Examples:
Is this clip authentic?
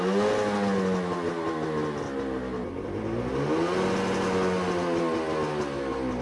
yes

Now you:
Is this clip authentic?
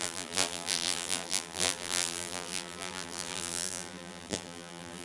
no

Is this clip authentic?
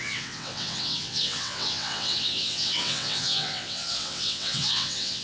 no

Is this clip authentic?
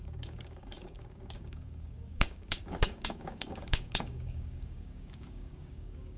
no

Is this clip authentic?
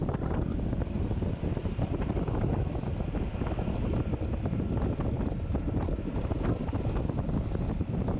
yes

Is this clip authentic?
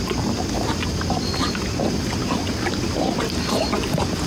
yes